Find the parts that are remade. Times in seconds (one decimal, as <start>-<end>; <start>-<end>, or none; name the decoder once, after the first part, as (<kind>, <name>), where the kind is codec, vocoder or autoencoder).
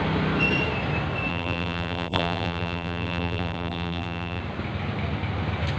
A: 1.3-4.4 (vocoder, BigVGAN v2)